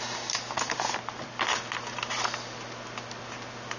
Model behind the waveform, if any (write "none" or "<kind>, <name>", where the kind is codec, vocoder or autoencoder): none